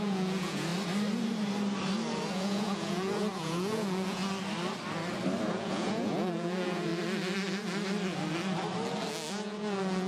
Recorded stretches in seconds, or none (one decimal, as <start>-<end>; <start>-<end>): 0.7-2.3; 4.2-5.5; 6.9-9.3